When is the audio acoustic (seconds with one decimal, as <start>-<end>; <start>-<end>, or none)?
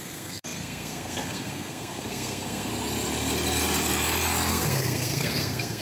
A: 2.7-4.5